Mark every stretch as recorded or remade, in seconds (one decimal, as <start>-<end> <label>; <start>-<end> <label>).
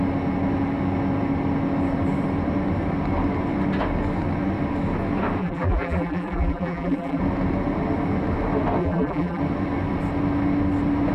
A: 0.0-5.4 recorded; 5.4-7.2 remade; 7.2-8.8 recorded; 8.8-9.4 remade; 9.4-11.1 recorded